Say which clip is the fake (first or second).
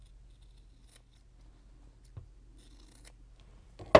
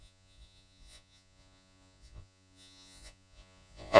second